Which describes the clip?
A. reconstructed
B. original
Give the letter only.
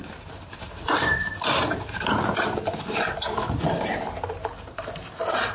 B